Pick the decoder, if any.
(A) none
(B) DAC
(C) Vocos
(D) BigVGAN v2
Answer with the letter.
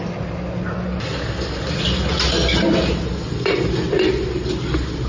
A